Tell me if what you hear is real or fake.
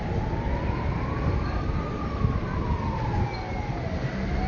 real